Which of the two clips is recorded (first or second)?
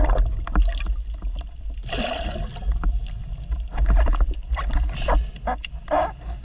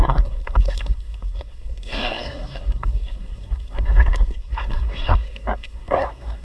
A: first